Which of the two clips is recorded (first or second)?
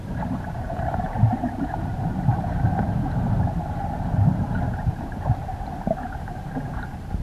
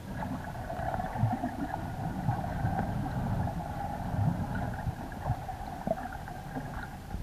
second